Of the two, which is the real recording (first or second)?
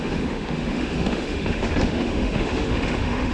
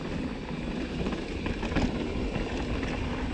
second